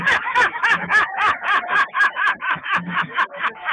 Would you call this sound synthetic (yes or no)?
yes